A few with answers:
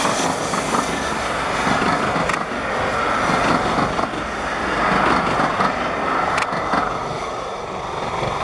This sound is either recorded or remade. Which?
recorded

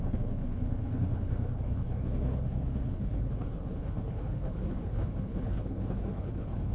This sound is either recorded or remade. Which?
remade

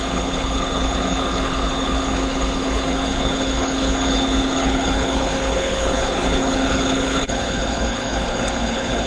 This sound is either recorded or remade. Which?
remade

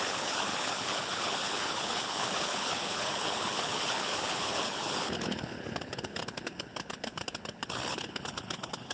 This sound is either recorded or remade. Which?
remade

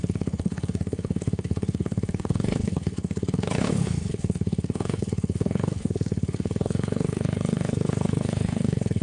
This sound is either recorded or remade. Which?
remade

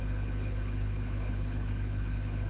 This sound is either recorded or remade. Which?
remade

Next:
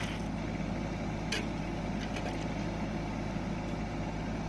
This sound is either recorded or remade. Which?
recorded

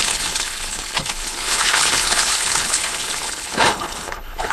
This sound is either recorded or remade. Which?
remade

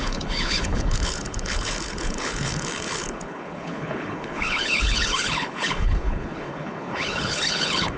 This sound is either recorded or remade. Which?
remade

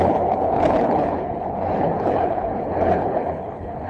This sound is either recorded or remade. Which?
remade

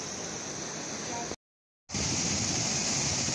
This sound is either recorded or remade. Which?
recorded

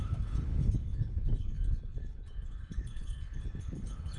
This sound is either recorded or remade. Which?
remade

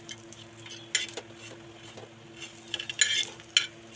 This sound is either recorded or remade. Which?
recorded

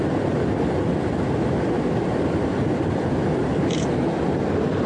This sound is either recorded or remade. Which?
recorded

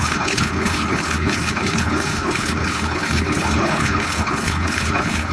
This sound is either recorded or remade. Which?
remade